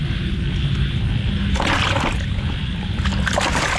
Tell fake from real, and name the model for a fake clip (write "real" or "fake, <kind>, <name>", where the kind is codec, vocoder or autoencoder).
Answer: real